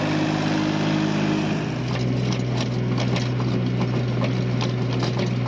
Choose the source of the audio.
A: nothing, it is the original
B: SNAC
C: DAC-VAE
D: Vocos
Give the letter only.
A